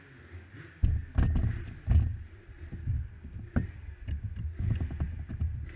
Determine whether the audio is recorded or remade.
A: recorded